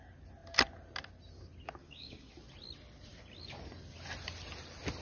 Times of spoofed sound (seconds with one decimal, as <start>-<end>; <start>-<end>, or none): 1.8-2.3